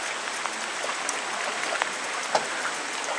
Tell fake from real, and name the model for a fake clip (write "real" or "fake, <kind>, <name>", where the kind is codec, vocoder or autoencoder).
real